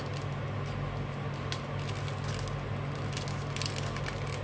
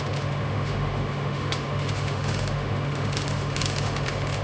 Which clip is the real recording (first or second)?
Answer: first